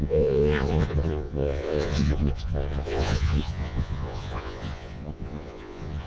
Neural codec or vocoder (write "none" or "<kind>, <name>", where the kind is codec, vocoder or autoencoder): vocoder, Vocos